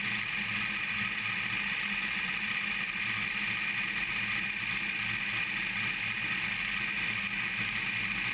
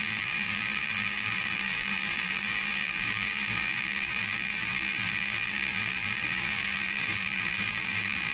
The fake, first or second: second